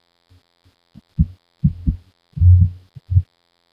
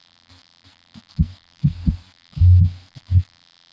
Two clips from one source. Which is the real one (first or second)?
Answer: first